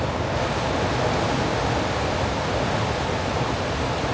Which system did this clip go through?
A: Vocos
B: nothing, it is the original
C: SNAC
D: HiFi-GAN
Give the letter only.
B